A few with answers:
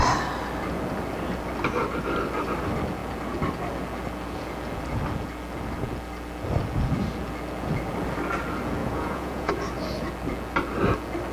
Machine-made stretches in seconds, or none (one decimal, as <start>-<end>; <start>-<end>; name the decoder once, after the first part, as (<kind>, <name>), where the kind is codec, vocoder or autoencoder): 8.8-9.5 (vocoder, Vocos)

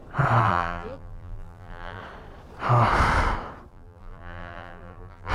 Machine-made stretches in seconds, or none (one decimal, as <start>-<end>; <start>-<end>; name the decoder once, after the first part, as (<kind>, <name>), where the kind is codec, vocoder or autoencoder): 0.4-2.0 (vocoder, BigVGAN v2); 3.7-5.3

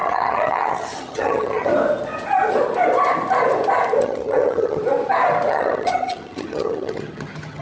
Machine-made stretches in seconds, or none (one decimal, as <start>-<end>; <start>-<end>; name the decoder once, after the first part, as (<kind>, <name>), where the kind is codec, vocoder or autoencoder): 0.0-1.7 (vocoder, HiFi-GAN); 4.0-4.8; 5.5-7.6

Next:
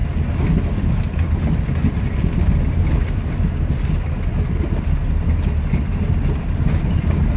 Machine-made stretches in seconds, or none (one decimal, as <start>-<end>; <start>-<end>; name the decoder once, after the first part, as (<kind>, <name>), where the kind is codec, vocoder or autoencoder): none

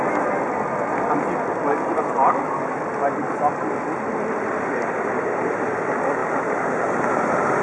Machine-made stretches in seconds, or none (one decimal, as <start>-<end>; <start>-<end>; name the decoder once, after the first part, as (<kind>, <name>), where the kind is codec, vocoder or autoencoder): none

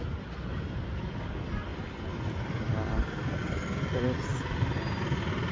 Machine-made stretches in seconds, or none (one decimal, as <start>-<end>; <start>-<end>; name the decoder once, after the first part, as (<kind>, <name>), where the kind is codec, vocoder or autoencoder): none

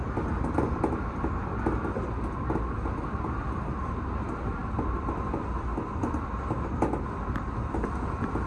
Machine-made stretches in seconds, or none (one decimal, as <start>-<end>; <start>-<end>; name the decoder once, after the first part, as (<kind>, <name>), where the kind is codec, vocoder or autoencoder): none

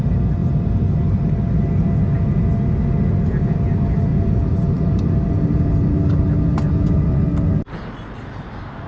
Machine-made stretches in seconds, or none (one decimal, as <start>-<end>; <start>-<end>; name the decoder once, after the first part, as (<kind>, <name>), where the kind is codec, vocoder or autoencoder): 4.1-6.2 (vocoder, BigVGAN v2)